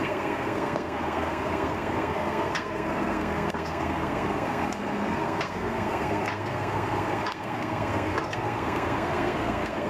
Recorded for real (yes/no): no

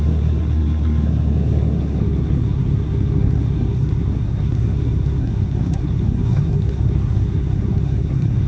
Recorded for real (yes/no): no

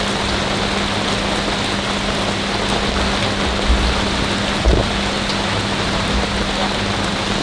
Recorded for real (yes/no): yes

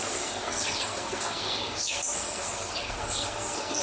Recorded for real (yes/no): no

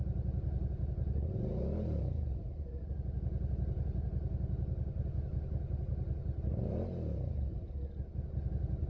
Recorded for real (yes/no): yes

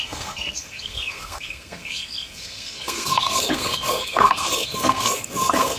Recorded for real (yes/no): no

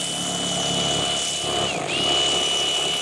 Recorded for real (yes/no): yes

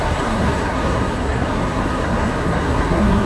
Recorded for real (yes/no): no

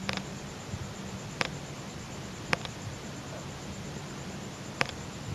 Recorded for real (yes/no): yes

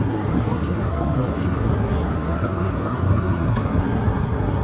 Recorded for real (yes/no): no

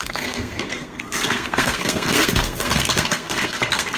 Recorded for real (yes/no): no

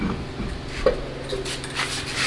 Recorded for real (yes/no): yes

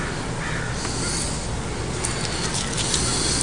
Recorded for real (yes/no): yes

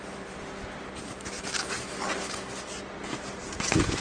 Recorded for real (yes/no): yes